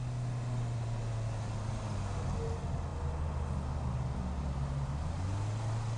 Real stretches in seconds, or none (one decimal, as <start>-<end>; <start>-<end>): 0.0-6.0